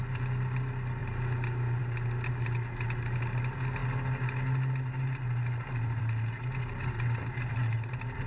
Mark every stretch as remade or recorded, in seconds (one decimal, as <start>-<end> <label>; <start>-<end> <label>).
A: 0.0-8.3 recorded